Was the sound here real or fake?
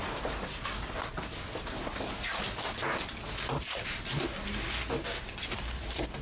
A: real